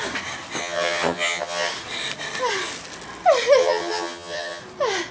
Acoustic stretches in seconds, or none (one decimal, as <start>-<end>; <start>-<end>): 0.0-0.6; 1.7-3.6; 4.6-5.1